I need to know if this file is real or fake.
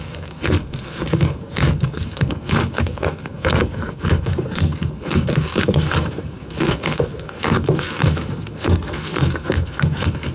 fake